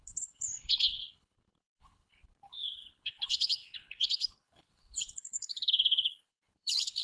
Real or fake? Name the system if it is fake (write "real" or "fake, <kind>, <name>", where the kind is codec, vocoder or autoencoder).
fake, codec, HILCodec